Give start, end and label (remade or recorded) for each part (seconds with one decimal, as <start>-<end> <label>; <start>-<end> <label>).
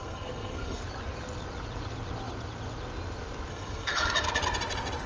0.0-0.8 remade; 0.8-3.5 recorded; 3.5-4.1 remade; 4.1-5.1 recorded